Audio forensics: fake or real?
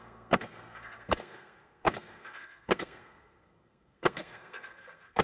fake